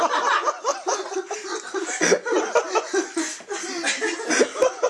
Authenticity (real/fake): real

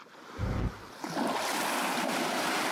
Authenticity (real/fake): real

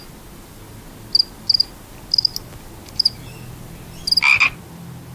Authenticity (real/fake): real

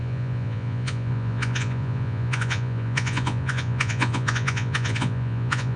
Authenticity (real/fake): fake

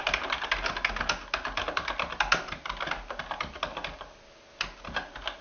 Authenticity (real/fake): real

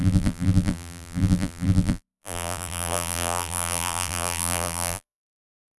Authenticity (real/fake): fake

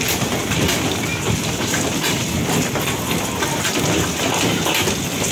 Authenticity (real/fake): real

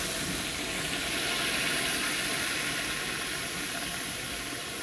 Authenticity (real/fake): real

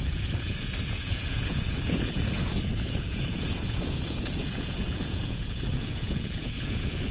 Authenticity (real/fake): fake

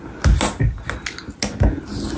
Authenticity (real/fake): real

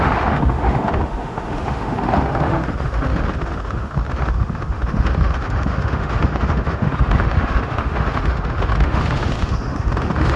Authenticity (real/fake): fake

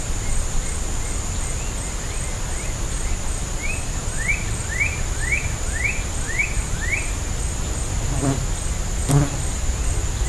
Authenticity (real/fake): real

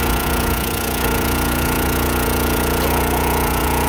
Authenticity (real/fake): fake